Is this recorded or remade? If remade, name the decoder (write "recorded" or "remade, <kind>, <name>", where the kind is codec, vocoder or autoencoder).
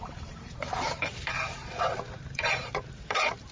remade, vocoder, BigVGAN v2